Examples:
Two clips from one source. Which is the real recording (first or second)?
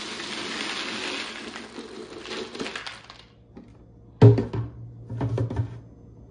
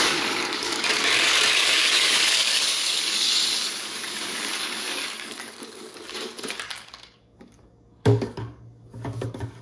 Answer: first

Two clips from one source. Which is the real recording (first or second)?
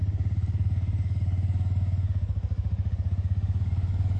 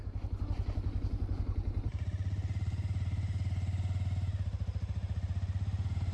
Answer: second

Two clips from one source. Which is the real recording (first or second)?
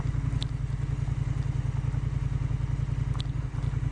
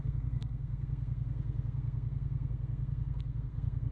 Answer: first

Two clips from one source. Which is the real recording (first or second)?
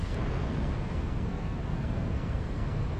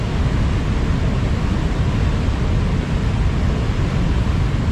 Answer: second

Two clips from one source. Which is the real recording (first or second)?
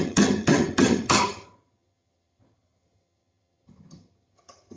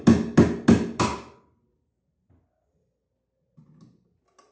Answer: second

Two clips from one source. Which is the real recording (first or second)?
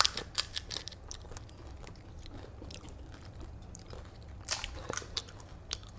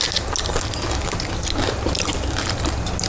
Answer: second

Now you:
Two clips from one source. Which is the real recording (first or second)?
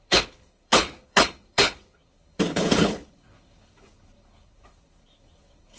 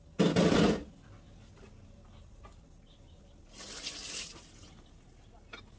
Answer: second